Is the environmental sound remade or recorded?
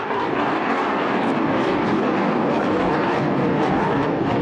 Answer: remade